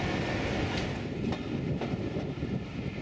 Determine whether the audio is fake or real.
real